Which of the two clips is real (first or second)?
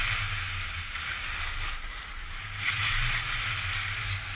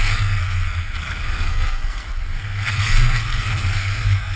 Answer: first